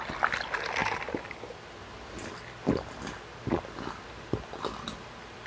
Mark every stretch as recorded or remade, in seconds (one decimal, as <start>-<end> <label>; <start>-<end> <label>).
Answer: 0.0-5.5 recorded